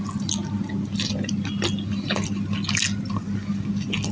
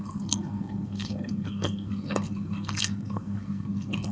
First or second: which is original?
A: first